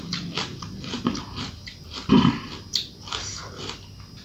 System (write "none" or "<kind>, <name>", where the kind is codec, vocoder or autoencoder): none